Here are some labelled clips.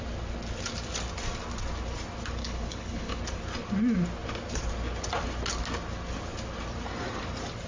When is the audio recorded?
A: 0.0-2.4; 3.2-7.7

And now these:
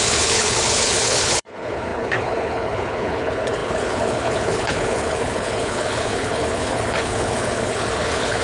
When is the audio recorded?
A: none

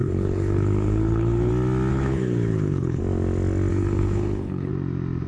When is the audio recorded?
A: 1.5-1.9; 3.0-3.7; 4.7-5.3

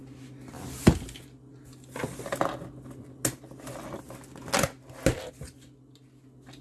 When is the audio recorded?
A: 0.0-6.6

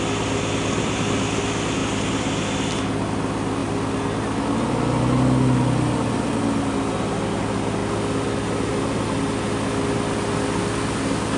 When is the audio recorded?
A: 0.0-11.4

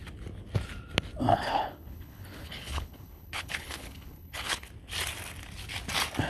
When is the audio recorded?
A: 0.0-1.3; 4.7-6.3

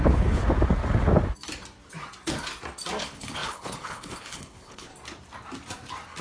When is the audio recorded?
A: 0.4-3.0; 4.9-6.2